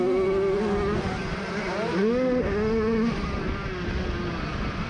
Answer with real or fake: real